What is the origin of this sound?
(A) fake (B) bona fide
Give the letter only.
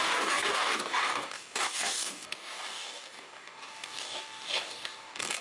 A